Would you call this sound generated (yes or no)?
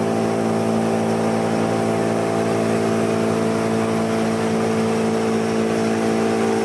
no